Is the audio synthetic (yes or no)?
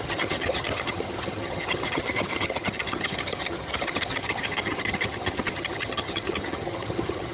yes